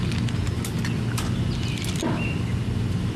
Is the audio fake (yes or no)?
no